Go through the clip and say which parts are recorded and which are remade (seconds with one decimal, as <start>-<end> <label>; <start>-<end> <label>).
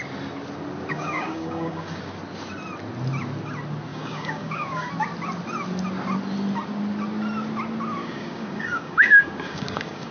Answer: 0.0-0.9 recorded; 0.9-2.0 remade; 2.0-3.9 recorded; 3.9-4.9 remade; 4.9-8.0 recorded; 8.0-10.1 remade